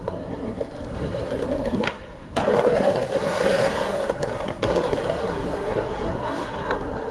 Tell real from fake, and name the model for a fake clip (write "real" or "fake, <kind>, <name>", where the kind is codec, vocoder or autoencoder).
fake, codec, SNAC